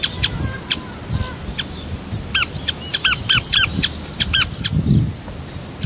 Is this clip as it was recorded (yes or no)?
yes